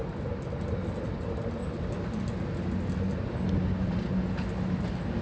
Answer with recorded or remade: recorded